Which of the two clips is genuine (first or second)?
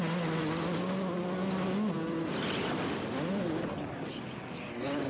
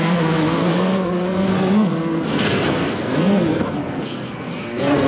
first